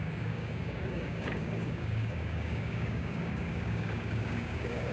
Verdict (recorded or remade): remade